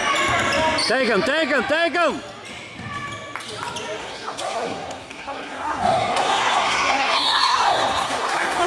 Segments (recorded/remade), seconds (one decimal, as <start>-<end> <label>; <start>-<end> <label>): 0.0-4.0 recorded; 4.0-8.7 remade